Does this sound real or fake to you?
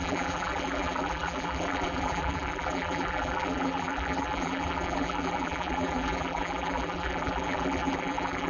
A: fake